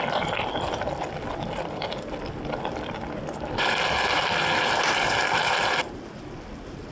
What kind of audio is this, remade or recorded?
recorded